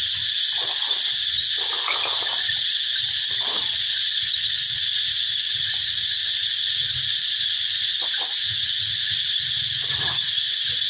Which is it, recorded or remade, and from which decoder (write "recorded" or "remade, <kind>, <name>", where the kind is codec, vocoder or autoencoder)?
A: recorded